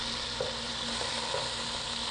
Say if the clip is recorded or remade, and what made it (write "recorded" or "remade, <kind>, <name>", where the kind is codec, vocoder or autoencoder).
recorded